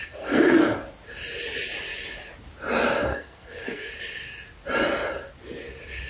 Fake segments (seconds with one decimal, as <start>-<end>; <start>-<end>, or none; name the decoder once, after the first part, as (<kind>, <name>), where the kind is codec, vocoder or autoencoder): 0.0-0.6 (codec, SNAC); 3.1-3.9